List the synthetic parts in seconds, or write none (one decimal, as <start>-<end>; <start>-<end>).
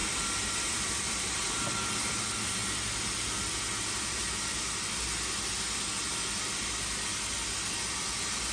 0.0-2.2; 2.6-4.6